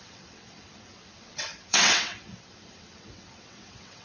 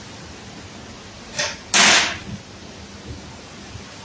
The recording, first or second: second